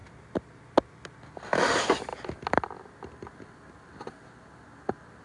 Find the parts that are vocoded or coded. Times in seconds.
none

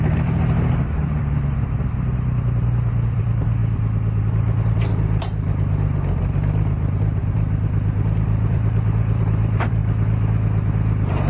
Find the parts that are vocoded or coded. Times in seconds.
0.0-3.6 (vocoder, BigVGAN v2); 4.2-9.8

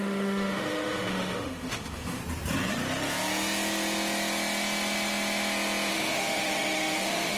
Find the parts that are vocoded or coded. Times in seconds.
0.0-2.2 (autoencoder, DAC-VAE); 5.9-7.4

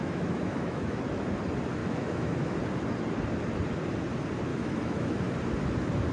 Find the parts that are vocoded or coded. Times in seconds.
0.0-1.0 (autoencoder, DAC-VAE); 1.8-2.6; 4.5-5.2

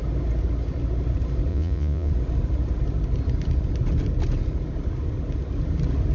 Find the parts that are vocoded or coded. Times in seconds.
1.5-2.1 (vocoder, Vocos)

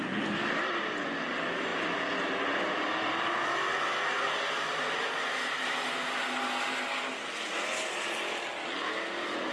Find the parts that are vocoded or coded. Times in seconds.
none

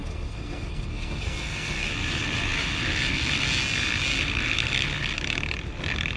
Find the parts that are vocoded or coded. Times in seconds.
0.0-1.9 (codec, SNAC)

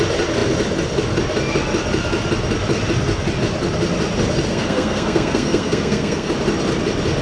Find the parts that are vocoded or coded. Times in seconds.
4.5-6.3 (codec, SNAC)